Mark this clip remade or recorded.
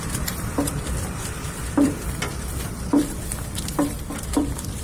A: remade